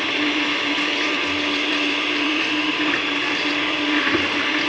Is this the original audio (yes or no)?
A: no